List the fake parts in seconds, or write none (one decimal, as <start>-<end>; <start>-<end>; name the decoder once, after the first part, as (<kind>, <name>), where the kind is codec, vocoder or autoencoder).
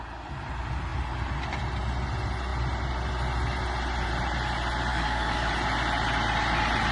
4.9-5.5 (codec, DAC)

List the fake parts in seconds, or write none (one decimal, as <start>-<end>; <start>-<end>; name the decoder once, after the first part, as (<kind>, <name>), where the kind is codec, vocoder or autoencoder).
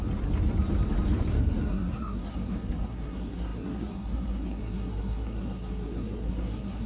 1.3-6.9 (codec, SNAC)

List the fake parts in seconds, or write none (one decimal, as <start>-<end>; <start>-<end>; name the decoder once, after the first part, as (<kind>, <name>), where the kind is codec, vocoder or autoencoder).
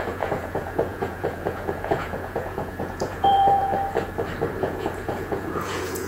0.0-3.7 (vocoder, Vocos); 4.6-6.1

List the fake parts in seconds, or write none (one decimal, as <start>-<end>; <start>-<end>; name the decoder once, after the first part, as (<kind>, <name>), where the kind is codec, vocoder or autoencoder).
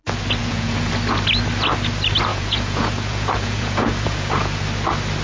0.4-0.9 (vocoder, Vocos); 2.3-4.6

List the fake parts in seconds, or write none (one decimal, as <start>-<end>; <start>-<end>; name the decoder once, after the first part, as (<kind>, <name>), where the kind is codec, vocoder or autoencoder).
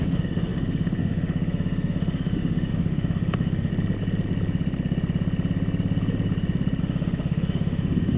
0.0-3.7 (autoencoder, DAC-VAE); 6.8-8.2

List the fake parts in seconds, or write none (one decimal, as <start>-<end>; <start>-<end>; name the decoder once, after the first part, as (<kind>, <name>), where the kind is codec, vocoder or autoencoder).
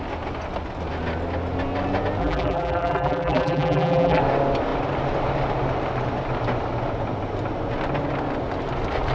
2.2-4.2 (vocoder, BigVGAN v2)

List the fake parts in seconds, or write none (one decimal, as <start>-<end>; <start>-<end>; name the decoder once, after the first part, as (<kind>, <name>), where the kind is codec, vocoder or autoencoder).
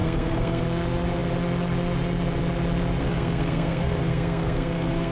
0.0-0.6 (codec, SNAC); 3.0-5.1